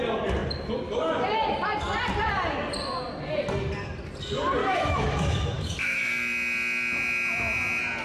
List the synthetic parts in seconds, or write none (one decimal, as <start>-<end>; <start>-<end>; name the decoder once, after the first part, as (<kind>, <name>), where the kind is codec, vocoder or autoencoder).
4.6-6.1 (autoencoder, DAC-VAE)